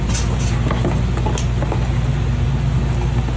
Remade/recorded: recorded